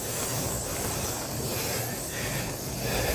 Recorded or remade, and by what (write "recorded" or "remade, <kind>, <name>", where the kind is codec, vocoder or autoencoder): recorded